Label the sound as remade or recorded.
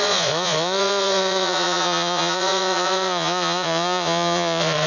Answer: remade